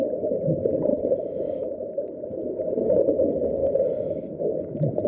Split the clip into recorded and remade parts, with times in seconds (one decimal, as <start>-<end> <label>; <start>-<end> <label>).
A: 0.0-0.9 recorded; 0.9-3.0 remade; 3.0-5.1 recorded